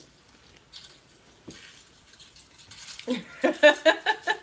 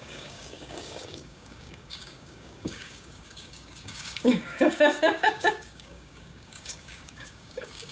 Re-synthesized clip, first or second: second